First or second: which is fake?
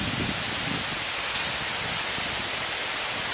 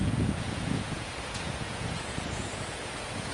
second